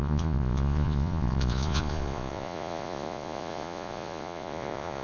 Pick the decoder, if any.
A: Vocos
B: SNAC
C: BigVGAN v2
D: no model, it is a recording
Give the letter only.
A